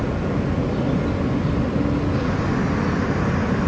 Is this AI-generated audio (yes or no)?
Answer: no